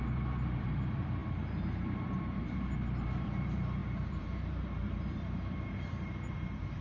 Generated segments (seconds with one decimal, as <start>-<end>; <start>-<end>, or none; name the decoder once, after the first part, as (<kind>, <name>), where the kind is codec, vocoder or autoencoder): 0.0-6.8 (vocoder, BigVGAN v2)